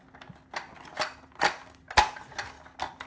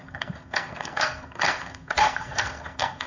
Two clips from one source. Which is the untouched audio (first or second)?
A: first